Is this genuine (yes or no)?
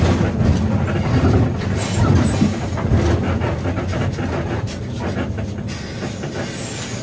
yes